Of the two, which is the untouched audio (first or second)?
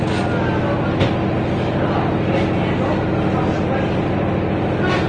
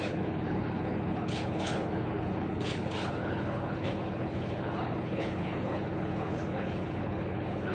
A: first